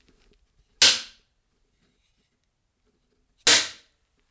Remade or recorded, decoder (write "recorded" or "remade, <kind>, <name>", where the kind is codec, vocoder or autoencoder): recorded